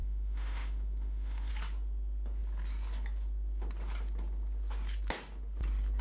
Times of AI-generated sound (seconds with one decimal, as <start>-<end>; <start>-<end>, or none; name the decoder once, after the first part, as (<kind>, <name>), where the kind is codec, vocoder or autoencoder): 0.0-1.5 (autoencoder, DAC-VAE)